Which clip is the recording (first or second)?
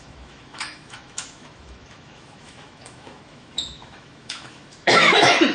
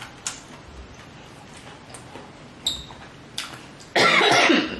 second